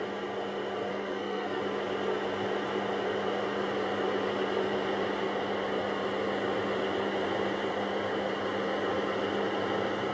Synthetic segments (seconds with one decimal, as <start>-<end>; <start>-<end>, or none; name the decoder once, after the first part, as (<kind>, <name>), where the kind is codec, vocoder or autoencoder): 0.9-1.6 (codec, SNAC)